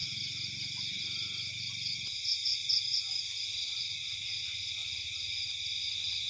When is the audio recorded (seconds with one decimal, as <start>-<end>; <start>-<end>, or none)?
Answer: 0.0-6.3